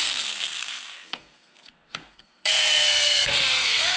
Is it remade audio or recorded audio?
remade